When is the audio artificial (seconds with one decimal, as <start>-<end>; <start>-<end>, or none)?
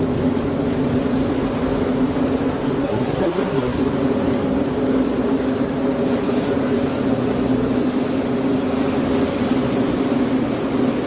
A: 2.8-3.8